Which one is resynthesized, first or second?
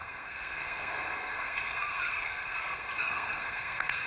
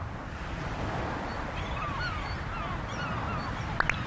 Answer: first